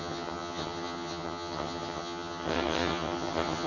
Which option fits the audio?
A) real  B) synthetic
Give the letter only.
B